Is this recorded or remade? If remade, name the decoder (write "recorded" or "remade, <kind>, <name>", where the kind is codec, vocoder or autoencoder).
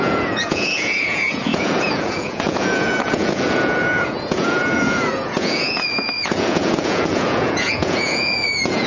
remade, vocoder, Vocos